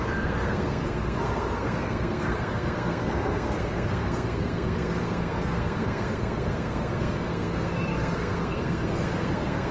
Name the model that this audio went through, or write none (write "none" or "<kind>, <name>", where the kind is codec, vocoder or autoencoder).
codec, SNAC